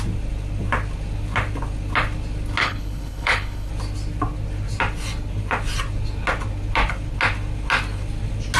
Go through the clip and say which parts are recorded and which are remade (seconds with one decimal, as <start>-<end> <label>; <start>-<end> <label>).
0.0-2.6 recorded; 2.6-3.7 remade; 3.7-8.6 recorded